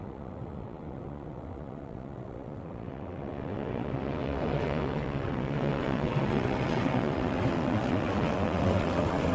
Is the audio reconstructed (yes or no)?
yes